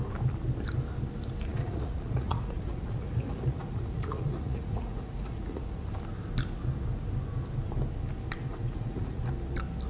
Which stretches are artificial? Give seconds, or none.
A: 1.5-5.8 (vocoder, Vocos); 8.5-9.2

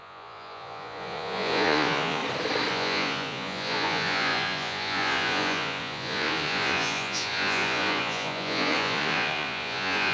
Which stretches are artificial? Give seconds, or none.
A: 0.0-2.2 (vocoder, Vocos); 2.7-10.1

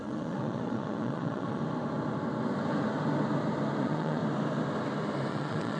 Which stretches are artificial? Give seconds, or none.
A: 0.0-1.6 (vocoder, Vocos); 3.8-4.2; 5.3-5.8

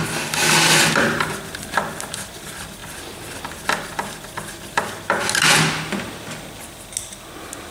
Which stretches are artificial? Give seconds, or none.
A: none

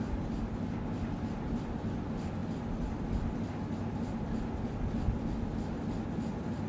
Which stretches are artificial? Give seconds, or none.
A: none

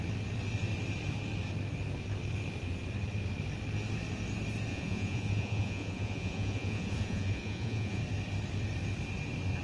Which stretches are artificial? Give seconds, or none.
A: 4.7-8.0 (vocoder, Vocos)

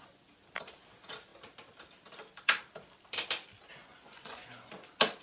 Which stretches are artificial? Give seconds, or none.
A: 3.8-4.7 (vocoder, Vocos)